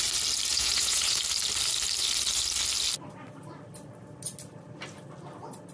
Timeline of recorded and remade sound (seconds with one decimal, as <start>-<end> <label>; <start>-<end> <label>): 0.0-0.5 recorded; 0.5-1.2 remade; 1.2-5.7 recorded